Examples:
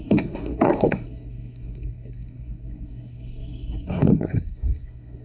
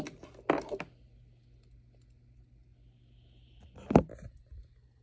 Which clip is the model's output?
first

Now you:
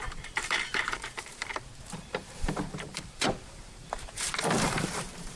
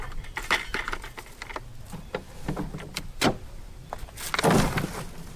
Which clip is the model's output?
first